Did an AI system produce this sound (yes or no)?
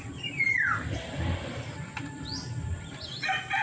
no